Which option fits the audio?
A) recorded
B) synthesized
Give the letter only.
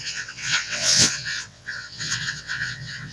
B